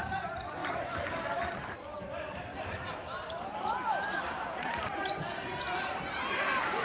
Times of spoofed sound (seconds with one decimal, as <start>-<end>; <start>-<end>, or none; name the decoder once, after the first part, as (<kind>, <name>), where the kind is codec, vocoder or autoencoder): 2.5-6.0 (vocoder, BigVGAN v2)